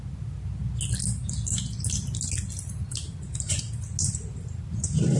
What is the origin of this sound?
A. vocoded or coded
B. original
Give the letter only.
B